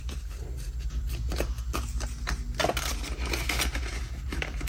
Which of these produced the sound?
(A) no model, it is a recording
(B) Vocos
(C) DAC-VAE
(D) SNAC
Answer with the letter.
A